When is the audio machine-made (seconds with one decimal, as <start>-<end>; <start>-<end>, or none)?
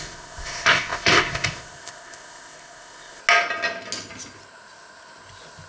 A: 0.0-3.2